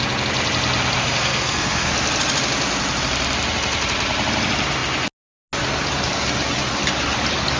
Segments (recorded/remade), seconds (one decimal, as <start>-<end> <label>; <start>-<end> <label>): 0.0-1.0 recorded; 1.0-1.9 remade; 1.9-7.6 recorded